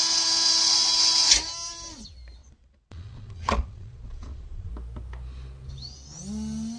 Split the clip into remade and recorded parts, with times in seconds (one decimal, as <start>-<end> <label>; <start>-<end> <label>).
0.0-2.4 recorded; 2.4-4.7 remade; 4.7-6.8 recorded